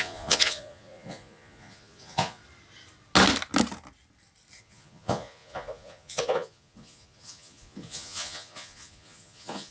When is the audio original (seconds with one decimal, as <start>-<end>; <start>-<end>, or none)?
2.4-4.6